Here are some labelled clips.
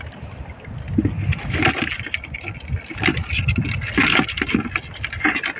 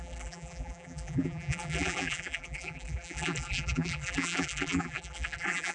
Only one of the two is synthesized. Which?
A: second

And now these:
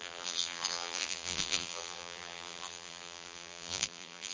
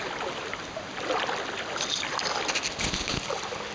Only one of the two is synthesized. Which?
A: first